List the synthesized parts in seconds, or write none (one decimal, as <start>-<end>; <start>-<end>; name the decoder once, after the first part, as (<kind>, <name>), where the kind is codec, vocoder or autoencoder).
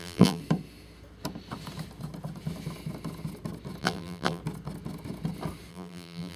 0.0-0.4 (vocoder, BigVGAN v2); 3.8-4.4; 5.7-6.4